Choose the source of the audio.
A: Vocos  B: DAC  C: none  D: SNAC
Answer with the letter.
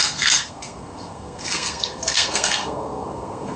D